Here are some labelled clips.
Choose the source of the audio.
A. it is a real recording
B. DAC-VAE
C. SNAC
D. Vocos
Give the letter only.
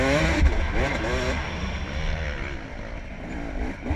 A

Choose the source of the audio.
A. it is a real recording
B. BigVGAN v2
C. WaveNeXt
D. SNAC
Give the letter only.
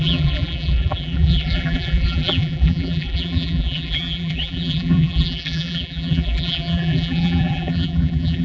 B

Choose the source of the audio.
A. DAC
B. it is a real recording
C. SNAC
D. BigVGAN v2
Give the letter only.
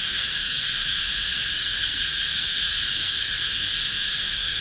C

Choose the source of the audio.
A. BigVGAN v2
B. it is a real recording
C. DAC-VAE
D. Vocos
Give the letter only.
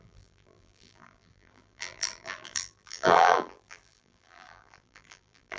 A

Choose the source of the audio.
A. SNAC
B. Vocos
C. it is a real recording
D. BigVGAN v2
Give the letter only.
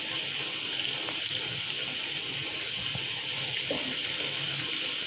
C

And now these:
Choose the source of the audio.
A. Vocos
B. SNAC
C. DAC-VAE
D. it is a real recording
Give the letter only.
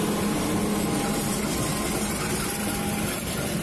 D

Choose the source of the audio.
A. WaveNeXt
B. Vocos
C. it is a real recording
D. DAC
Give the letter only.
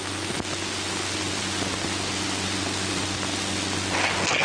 C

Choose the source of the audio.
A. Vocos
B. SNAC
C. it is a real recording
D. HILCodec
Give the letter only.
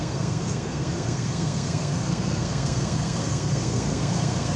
B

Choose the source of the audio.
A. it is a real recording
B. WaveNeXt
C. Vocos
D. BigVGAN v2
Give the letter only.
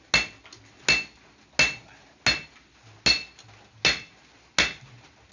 A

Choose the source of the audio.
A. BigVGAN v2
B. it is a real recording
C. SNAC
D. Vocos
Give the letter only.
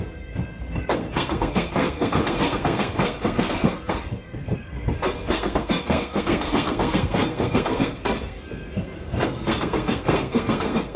C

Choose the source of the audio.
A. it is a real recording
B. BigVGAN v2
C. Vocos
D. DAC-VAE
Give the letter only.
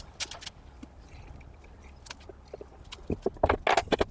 A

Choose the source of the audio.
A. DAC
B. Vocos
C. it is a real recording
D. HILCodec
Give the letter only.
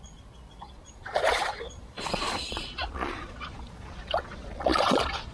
B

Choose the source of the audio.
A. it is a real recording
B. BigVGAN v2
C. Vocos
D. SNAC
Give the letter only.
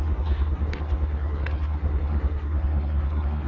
D